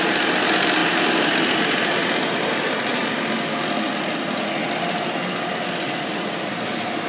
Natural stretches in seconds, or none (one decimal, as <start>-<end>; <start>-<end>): 0.0-7.1